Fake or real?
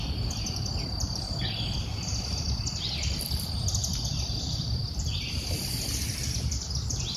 fake